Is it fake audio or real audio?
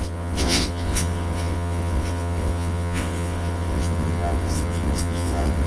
fake